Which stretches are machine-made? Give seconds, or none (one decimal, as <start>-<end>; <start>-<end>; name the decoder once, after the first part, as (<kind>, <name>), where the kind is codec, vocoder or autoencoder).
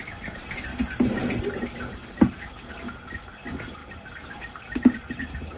none